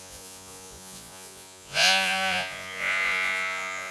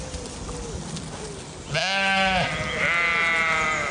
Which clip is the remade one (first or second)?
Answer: first